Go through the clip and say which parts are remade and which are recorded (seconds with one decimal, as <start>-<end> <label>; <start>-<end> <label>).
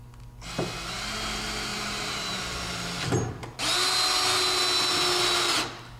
0.0-1.7 recorded; 1.7-2.4 remade; 2.4-6.0 recorded